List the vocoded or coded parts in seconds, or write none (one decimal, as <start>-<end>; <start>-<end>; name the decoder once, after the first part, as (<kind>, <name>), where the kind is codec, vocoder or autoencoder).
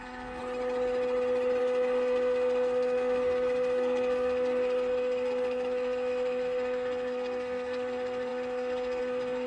0.0-0.4 (codec, SNAC); 1.6-9.5